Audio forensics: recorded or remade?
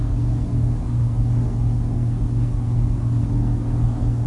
remade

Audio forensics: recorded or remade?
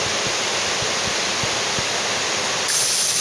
recorded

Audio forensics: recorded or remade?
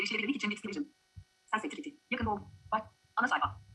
recorded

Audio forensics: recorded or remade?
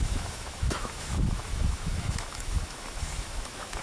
remade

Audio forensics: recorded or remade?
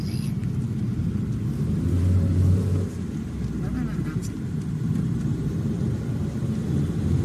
recorded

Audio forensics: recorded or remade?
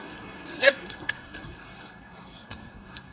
remade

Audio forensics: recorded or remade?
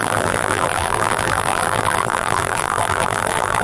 remade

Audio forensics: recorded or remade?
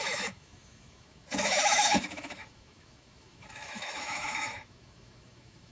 remade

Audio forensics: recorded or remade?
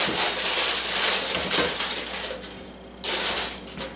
recorded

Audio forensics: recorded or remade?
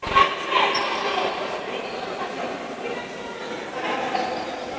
recorded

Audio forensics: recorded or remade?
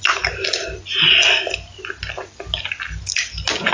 recorded